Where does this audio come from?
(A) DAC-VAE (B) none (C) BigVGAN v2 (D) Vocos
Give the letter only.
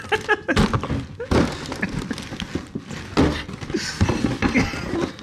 B